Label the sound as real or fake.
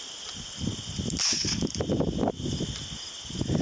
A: real